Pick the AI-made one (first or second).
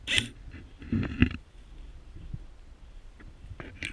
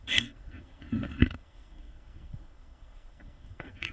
second